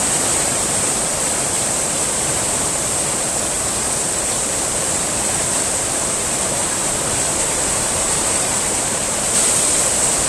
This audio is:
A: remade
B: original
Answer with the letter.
A